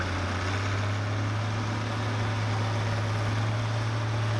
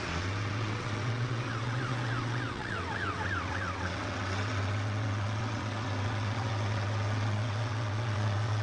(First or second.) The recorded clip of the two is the first